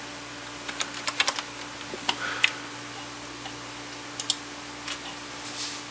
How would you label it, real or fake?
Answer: real